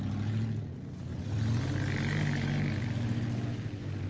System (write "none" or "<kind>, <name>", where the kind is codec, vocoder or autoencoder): none